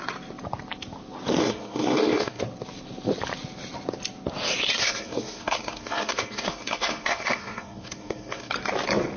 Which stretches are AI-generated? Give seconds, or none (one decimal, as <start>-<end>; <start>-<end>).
1.4-2.4; 4.7-8.5